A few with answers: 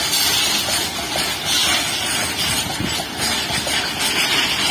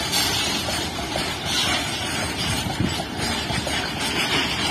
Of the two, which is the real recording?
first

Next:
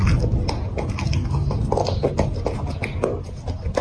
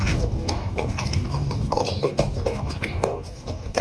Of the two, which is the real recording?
first